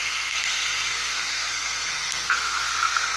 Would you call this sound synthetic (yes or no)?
yes